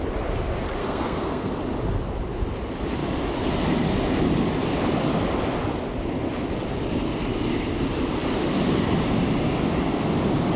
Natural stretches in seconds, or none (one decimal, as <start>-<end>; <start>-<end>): 0.0-0.8; 1.5-10.6